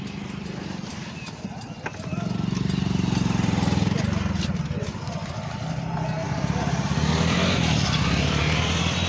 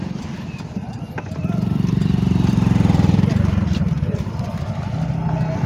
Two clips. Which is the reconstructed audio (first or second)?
second